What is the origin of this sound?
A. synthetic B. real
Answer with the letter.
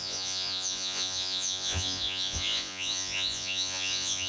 A